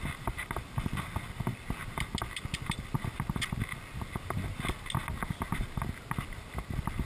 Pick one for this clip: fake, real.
real